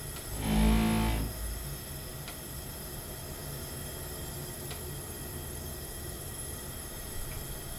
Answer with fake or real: real